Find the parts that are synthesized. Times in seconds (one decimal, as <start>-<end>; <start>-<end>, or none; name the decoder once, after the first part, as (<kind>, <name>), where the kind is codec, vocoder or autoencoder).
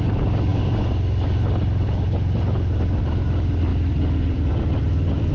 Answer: 0.0-0.5 (vocoder, BigVGAN v2); 3.0-5.3